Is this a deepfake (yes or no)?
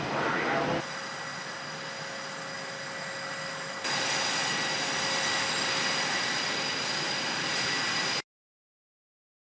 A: no